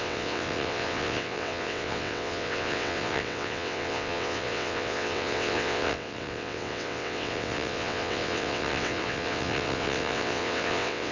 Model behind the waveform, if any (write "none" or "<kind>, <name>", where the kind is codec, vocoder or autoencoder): vocoder, WaveNeXt